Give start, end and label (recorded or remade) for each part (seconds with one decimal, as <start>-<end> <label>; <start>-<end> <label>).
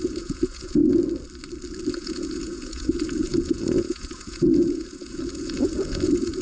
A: 0.0-0.8 remade; 0.8-1.9 recorded; 1.9-6.4 remade